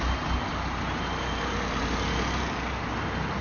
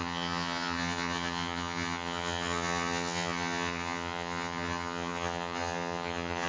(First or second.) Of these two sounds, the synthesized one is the second